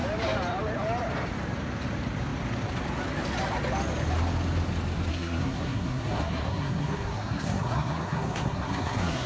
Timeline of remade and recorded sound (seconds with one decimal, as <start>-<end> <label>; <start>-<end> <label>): 0.0-5.1 recorded; 5.1-9.3 remade